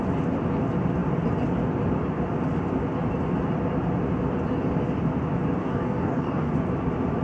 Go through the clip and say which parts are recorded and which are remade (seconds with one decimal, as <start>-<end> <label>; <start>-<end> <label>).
0.0-5.6 recorded; 5.6-6.5 remade; 6.5-7.2 recorded